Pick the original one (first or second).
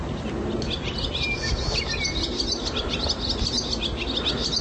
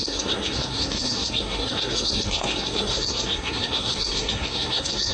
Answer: first